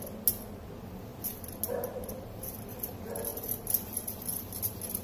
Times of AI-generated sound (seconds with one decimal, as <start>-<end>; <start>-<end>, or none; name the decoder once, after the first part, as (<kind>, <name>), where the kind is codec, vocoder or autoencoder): none